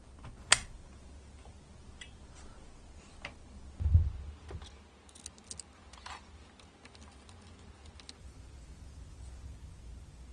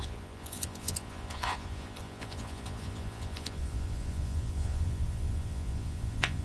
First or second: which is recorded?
first